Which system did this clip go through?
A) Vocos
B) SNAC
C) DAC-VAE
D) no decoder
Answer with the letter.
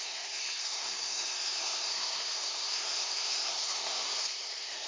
B